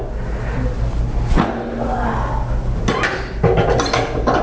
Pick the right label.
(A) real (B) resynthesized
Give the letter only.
A